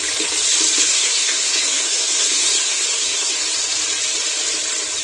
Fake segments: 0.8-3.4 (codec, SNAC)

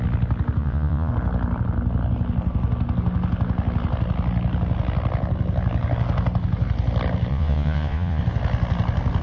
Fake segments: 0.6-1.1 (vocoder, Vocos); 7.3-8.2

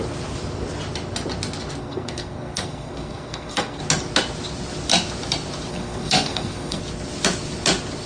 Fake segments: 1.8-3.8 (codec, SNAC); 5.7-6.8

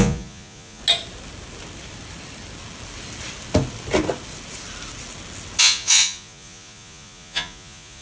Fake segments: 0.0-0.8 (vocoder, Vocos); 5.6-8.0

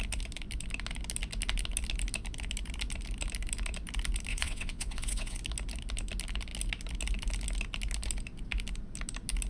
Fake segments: 4.3-5.4 (vocoder, WaveNeXt)

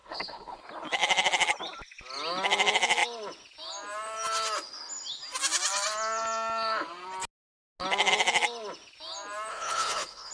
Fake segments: 0.0-0.6 (codec, HILCodec); 9.5-10.3